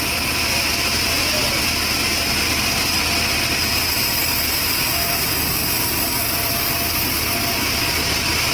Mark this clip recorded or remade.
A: recorded